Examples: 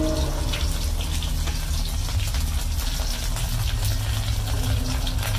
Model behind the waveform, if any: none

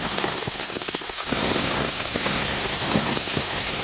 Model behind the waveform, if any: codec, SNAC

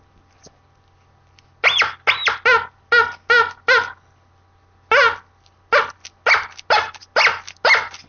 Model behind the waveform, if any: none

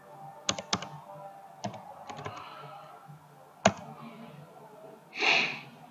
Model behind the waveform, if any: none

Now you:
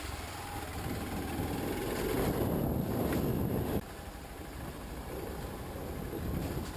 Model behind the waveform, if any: none